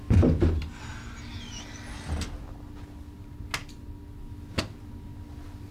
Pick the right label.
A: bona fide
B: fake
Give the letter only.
A